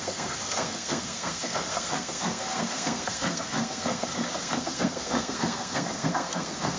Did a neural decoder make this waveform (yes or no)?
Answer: yes